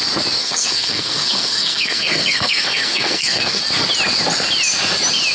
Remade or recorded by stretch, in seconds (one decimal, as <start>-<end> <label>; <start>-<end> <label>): 0.0-0.4 recorded; 0.4-3.6 remade; 3.6-5.3 recorded